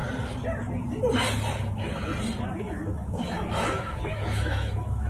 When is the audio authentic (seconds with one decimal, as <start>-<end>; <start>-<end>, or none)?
0.0-1.5; 2.1-2.6